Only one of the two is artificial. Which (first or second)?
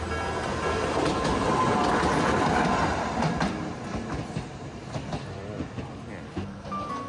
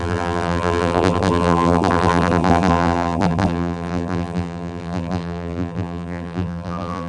second